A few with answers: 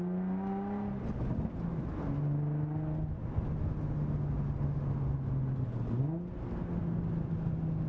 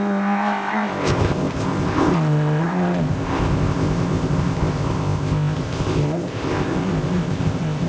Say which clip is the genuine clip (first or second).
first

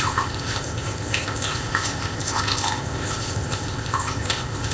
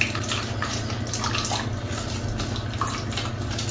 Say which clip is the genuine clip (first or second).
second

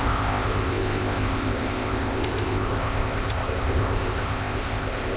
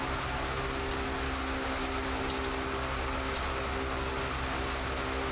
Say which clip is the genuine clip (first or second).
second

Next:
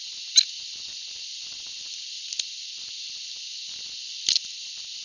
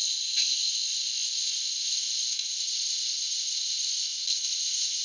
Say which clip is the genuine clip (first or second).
first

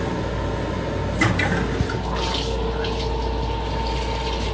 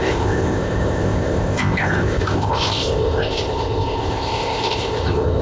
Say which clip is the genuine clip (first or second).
first